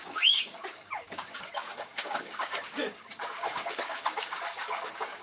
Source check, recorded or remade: remade